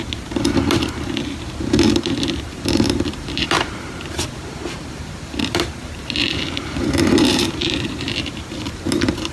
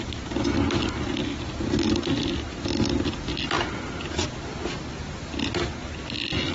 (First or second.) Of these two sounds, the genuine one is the second